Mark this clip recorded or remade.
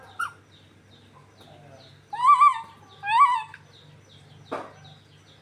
recorded